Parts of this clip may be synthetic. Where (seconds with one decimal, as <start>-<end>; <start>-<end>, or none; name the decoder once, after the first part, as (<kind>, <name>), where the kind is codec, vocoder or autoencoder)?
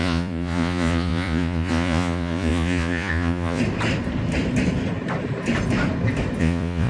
0.0-3.6 (vocoder, Vocos); 6.4-6.9